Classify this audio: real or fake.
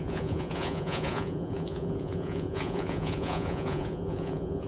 fake